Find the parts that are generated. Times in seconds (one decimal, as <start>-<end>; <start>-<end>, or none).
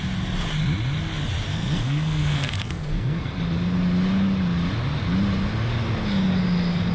1.5-3.4